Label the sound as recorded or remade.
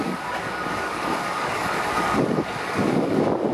remade